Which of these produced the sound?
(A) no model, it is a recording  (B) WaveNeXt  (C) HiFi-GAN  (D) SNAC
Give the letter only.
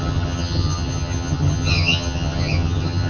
C